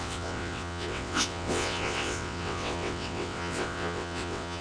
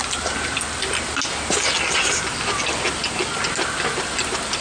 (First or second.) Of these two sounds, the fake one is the first